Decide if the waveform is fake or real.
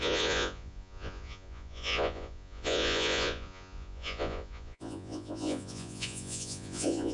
fake